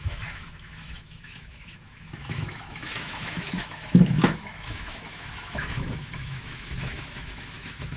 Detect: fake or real fake